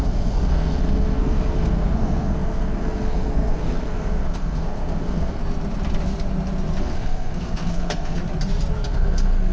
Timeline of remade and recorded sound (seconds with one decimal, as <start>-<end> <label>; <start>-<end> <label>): 0.0-5.4 remade; 5.4-6.8 recorded; 6.8-8.2 remade; 8.2-8.9 recorded; 8.9-9.5 remade